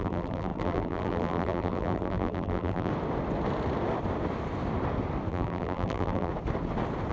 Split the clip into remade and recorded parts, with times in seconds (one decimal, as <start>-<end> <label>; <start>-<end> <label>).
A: 0.0-2.9 remade; 2.9-5.3 recorded; 5.3-6.3 remade; 6.3-7.1 recorded